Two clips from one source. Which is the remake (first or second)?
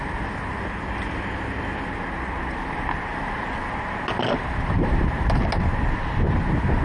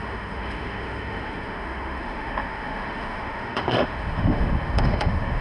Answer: second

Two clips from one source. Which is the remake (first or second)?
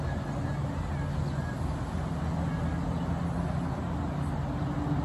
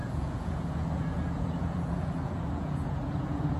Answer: second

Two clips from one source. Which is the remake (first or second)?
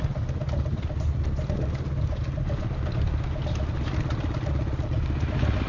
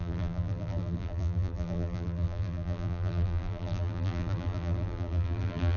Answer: second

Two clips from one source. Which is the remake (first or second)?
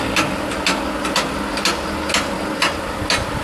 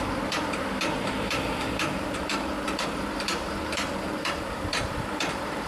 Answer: second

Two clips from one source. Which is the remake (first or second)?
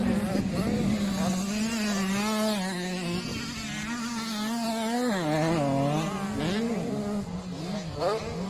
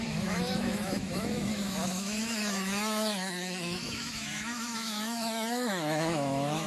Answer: second